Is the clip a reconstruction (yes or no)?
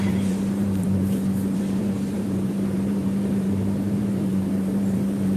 yes